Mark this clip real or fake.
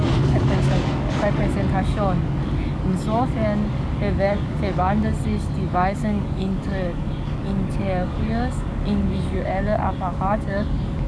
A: fake